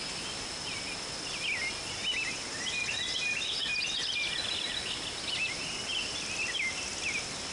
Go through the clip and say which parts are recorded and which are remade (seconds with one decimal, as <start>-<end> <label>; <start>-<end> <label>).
0.0-7.5 recorded